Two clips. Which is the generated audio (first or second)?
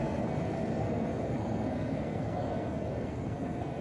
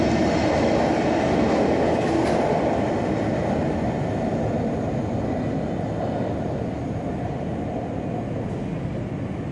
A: first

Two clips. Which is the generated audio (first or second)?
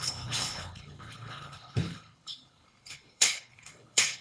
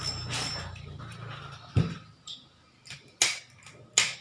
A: first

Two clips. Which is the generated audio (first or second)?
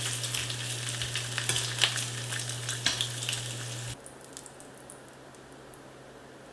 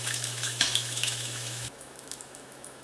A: second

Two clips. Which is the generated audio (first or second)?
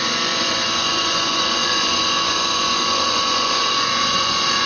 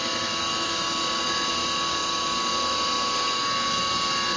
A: first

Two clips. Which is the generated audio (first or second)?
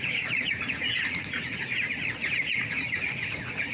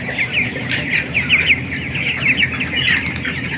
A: first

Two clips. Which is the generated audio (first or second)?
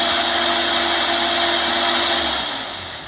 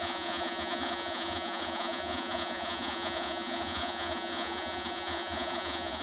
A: second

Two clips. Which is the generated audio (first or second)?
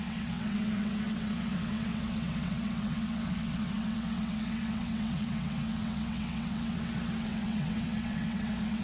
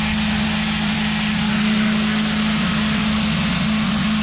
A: first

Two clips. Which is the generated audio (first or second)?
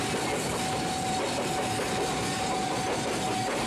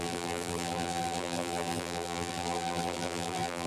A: second